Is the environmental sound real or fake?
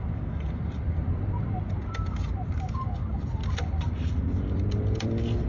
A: fake